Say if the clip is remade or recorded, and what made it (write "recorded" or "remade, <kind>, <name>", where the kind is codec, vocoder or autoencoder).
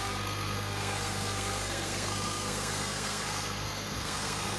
remade, codec, SNAC